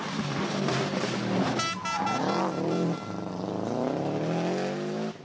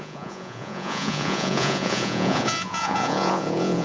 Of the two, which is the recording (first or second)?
first